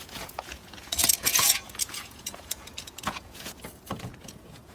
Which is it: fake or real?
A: fake